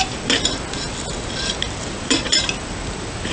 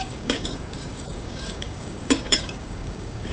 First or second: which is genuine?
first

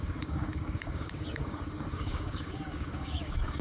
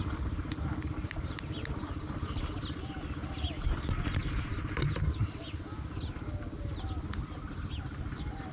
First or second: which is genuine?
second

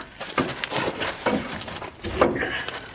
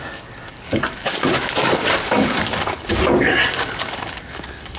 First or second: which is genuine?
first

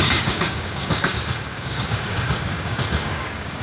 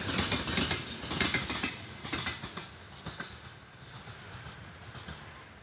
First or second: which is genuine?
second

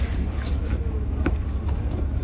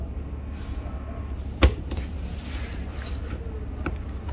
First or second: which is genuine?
second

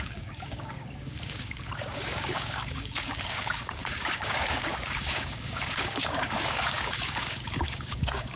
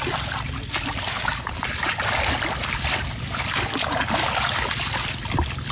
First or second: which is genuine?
second